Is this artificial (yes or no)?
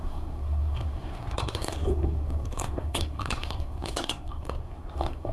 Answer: yes